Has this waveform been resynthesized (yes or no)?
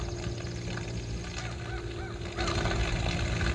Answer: no